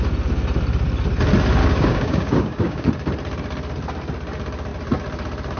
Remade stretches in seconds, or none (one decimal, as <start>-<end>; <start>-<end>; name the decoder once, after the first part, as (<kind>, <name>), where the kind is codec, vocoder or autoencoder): 1.6-2.9 (codec, DAC)